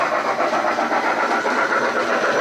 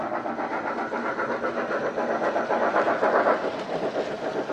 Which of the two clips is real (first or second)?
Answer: second